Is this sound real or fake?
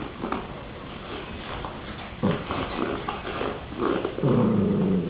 real